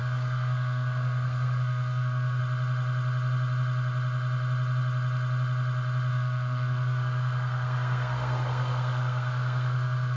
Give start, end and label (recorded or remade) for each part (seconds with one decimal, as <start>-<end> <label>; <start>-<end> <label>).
0.0-2.4 remade; 2.4-6.1 recorded; 6.1-10.2 remade